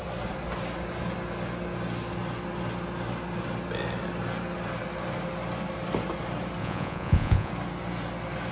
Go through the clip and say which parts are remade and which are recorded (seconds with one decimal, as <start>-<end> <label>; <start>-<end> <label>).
0.0-6.6 recorded; 6.6-7.5 remade; 7.5-8.5 recorded

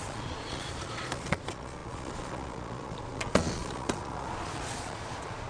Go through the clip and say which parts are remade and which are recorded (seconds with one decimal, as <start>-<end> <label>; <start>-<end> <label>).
0.0-5.5 remade

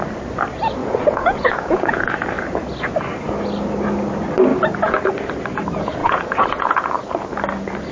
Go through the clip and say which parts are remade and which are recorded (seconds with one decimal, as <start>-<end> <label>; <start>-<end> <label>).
0.0-0.8 recorded; 0.8-2.1 remade; 2.1-6.0 recorded; 6.0-6.9 remade; 6.9-7.9 recorded

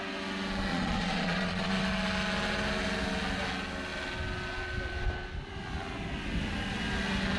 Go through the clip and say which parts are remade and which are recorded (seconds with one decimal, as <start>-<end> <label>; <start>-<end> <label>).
0.0-0.7 recorded; 0.7-1.7 remade; 1.7-7.4 recorded